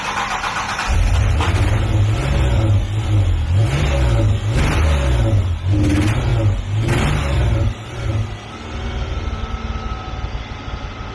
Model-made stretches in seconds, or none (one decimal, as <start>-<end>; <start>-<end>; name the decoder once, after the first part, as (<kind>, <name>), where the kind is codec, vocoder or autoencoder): none